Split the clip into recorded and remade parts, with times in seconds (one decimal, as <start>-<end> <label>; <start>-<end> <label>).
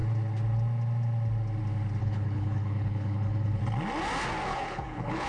0.0-2.0 recorded; 2.0-3.6 remade; 3.6-4.5 recorded; 4.5-5.3 remade